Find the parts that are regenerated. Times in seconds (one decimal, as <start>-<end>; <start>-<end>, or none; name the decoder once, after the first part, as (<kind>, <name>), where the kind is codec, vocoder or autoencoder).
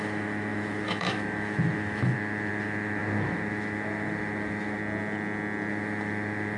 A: 0.0-4.8 (autoencoder, DAC-VAE); 5.7-6.6